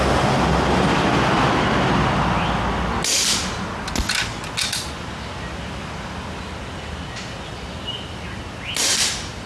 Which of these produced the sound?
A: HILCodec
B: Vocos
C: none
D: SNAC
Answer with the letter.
C